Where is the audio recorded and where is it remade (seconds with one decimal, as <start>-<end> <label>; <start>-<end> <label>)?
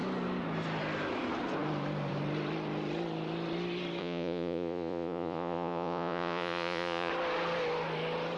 0.0-4.0 recorded; 4.0-7.1 remade; 7.1-8.4 recorded